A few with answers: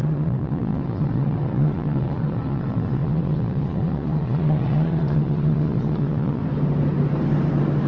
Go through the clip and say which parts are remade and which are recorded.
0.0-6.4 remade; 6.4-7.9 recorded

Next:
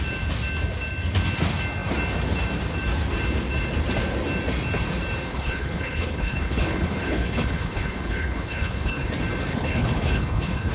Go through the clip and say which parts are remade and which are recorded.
0.0-5.3 recorded; 5.3-9.1 remade; 9.1-9.5 recorded; 9.5-10.7 remade

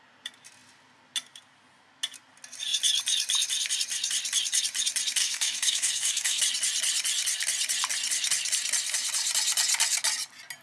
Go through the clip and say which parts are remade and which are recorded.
0.0-5.2 recorded; 5.2-6.4 remade; 6.4-10.6 recorded

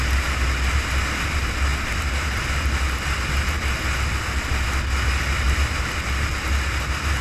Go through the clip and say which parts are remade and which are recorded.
0.0-7.2 recorded

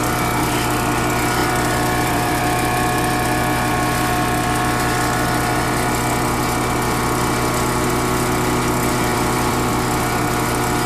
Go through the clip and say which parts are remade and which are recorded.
0.0-1.4 recorded; 1.4-2.4 remade; 2.4-9.1 recorded; 9.1-9.7 remade; 9.7-10.9 recorded

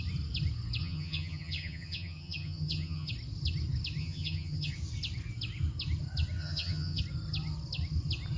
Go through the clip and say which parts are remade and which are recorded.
0.0-0.8 recorded; 0.8-3.1 remade; 3.1-4.0 recorded; 4.0-4.7 remade; 4.7-6.4 recorded; 6.4-7.0 remade; 7.0-8.4 recorded